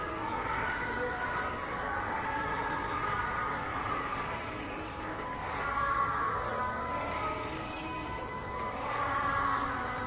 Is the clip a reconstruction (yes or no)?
yes